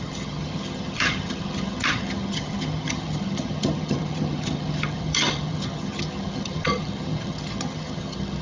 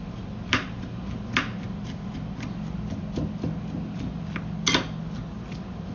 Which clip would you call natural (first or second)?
second